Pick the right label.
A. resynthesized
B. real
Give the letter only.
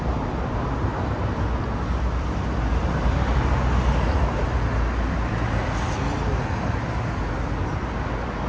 B